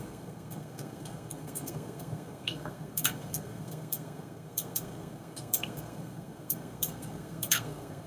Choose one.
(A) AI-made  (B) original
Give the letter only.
A